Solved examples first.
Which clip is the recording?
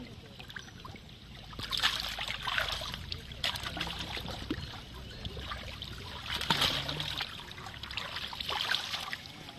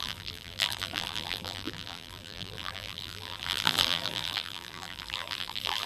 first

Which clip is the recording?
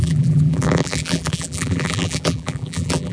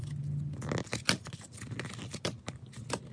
second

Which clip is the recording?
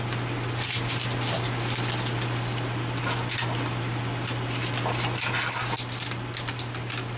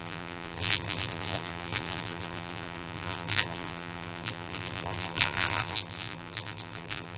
first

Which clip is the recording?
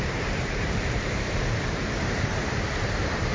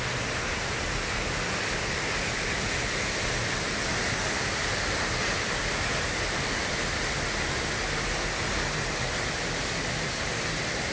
second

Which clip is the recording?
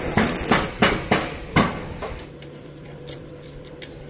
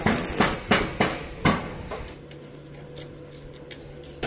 second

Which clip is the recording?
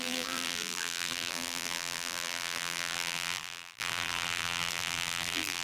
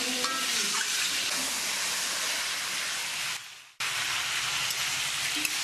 second